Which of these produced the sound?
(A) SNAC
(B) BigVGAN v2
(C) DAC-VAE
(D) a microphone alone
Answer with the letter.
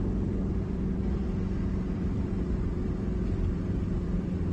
B